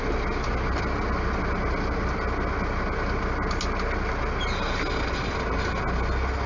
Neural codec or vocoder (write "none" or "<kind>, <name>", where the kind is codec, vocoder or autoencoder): none